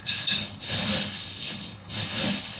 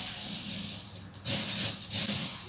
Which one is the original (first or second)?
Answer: second